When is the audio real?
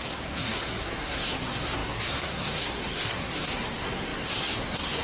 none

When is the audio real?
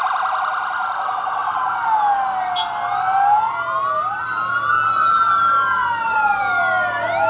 0.0-7.3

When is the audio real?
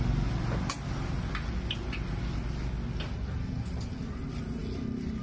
0.0-5.2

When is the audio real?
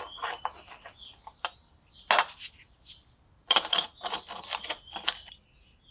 0.0-3.4; 4.4-5.9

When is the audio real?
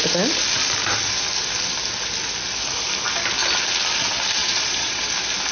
0.0-4.4; 5.1-5.5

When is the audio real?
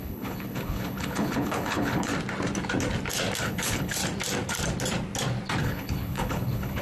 2.1-3.4; 4.0-5.6